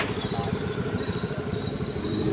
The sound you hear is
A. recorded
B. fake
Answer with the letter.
B